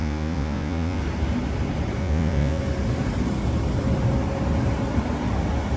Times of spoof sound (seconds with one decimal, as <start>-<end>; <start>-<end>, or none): 0.0-1.0; 2.0-2.6